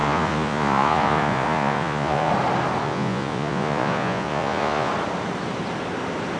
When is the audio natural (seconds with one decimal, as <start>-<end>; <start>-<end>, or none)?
2.3-2.8; 4.9-6.4